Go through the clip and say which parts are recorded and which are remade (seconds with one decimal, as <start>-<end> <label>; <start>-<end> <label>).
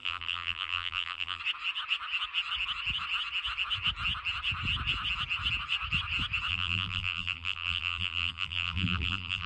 0.0-1.4 remade; 1.4-6.5 recorded; 6.5-9.5 remade